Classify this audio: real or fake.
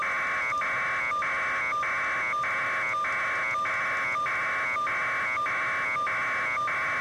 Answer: real